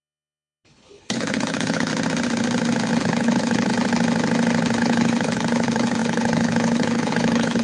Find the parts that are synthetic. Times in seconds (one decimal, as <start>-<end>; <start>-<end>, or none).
0.0-1.9; 3.0-3.7; 4.8-7.6